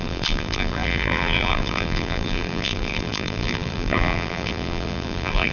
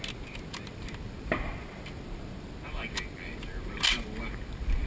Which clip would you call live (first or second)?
second